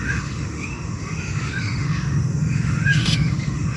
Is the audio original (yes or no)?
no